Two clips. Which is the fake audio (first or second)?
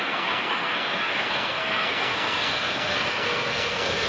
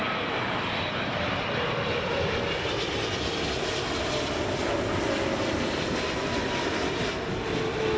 first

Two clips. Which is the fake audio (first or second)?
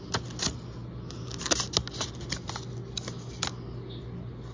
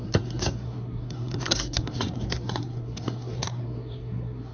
second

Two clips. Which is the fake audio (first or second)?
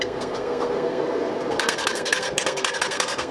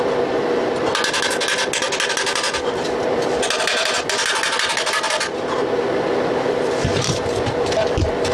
first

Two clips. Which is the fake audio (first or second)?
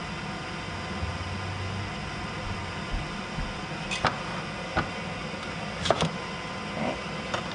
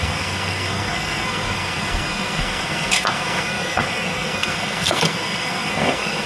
second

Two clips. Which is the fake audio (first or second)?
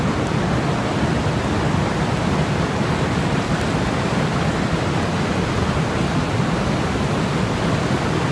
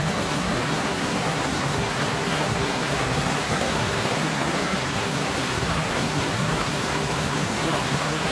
second